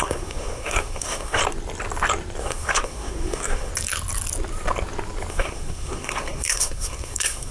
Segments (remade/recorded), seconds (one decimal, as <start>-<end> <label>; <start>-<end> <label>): 0.0-1.4 remade; 1.4-2.4 recorded; 2.4-3.7 remade; 3.7-5.3 recorded; 5.3-7.5 remade